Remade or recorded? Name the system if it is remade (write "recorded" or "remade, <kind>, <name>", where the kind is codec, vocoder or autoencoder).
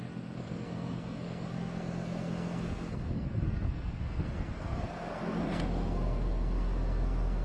remade, codec, SNAC